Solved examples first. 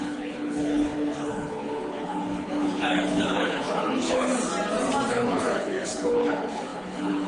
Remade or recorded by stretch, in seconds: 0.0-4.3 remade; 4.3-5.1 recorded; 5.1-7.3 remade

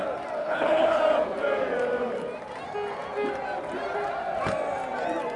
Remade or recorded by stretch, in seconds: 0.0-0.4 recorded; 0.4-1.0 remade; 1.0-5.4 recorded

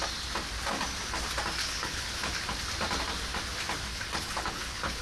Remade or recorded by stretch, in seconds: 0.0-1.6 recorded; 1.6-2.3 remade; 2.3-3.9 recorded; 3.9-5.0 remade

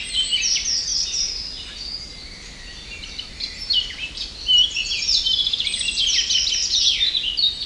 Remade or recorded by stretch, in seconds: 0.0-7.7 recorded

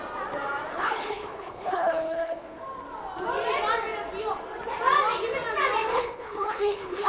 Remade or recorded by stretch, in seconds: 0.0-0.7 recorded; 0.7-2.6 remade; 2.6-5.9 recorded; 5.9-7.1 remade

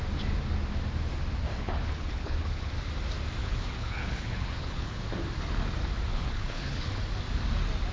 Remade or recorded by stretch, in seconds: 0.0-1.5 recorded; 1.5-2.7 remade; 2.7-3.4 recorded; 3.4-5.0 remade; 5.0-6.1 recorded; 6.1-7.0 remade; 7.0-7.9 recorded